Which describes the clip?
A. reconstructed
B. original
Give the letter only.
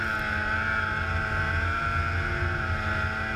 B